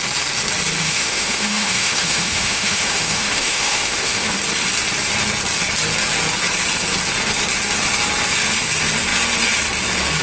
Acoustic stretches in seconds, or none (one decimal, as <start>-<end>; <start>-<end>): 0.0-0.8; 4.3-10.2